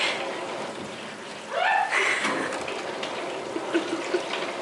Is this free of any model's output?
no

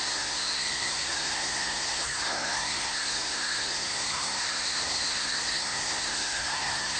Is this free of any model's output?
no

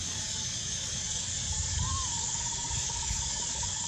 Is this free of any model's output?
no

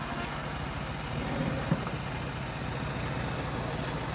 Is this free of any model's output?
yes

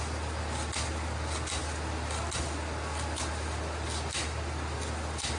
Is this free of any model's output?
yes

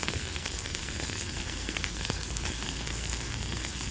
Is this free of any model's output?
no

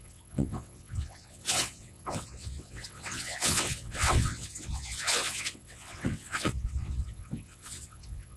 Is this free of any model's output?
no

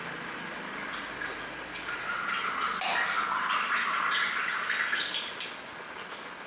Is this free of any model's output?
yes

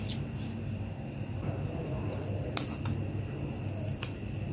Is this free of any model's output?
yes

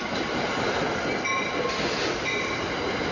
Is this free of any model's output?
yes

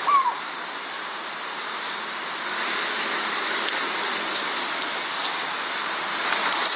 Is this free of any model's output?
yes